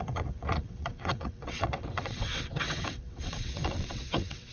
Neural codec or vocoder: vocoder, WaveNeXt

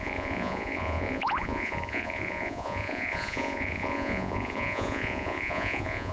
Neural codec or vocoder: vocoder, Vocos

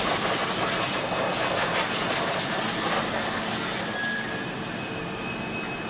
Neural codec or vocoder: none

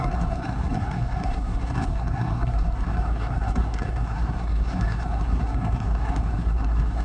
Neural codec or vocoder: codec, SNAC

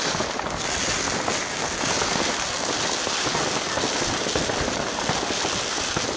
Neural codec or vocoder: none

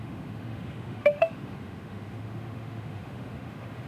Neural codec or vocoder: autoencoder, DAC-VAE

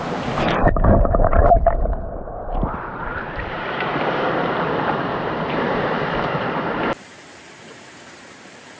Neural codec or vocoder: vocoder, BigVGAN v2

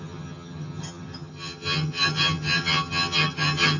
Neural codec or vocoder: vocoder, HiFi-GAN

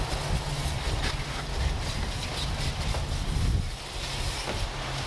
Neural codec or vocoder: none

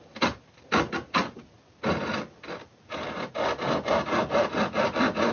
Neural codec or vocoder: none